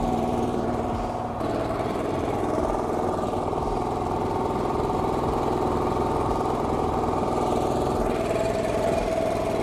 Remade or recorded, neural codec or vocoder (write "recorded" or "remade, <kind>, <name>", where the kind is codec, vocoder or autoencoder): remade, vocoder, BigVGAN v2